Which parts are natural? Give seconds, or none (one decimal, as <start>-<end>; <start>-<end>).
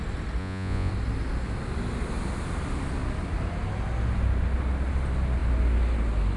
0.0-0.4; 0.9-6.4